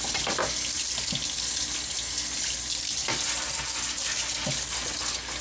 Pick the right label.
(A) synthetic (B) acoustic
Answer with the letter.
B